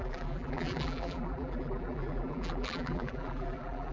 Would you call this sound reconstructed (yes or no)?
yes